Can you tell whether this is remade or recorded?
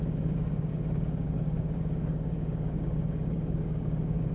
remade